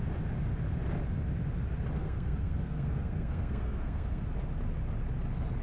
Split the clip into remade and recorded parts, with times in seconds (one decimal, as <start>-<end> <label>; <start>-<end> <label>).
0.0-2.0 recorded; 2.0-4.2 remade; 4.2-5.6 recorded